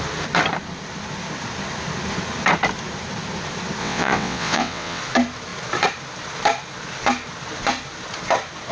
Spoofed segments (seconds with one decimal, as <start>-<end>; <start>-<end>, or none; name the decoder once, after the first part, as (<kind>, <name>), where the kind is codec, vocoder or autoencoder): 3.8-5.0 (vocoder, WaveNeXt)